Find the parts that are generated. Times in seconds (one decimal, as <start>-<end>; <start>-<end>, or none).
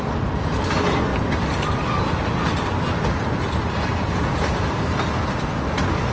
none